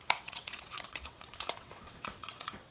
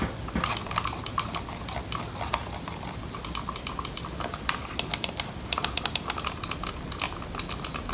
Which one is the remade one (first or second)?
first